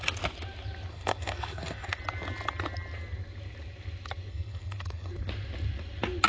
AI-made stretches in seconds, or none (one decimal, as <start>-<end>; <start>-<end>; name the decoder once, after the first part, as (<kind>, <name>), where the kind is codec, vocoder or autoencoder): 0.9-2.0 (codec, SNAC); 4.3-5.1